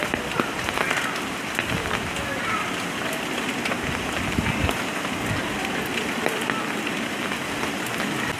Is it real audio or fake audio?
real